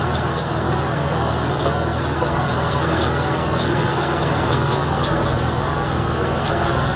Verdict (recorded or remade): remade